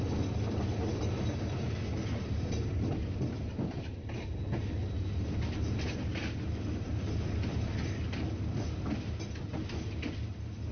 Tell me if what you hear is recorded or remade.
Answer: recorded